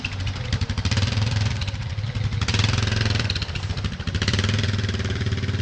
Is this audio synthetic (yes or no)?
yes